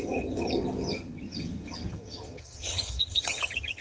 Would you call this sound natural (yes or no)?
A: no